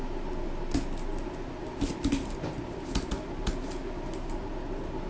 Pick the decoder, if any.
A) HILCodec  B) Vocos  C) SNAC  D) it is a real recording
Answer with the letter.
D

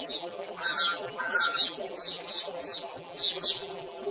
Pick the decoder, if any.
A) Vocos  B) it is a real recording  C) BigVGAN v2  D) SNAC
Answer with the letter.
C